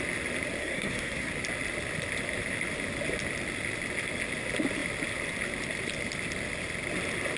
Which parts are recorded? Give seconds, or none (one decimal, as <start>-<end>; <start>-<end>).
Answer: 0.0-0.6; 1.3-7.4